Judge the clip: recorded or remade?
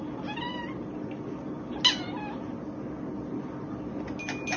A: recorded